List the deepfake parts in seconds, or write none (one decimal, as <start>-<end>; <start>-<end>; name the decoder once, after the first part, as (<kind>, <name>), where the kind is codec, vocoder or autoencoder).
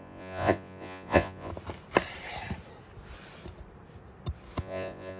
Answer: 0.0-1.5 (vocoder, Vocos); 4.6-5.2